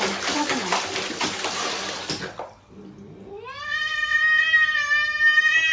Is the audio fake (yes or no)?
no